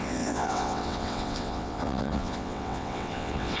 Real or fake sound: fake